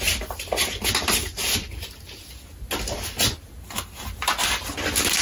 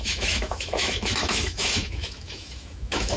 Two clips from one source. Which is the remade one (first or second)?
second